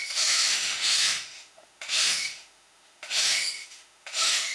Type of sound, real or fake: fake